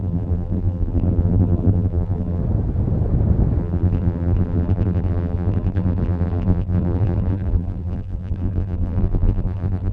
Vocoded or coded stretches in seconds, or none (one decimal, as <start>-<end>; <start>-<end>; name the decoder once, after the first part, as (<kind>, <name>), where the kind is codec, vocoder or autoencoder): 0.0-2.4 (vocoder, BigVGAN v2); 3.6-9.9